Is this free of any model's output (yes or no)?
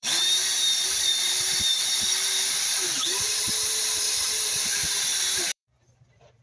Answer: no